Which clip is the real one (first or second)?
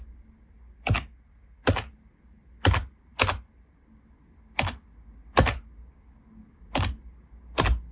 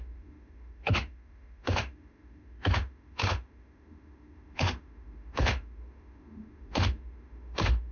first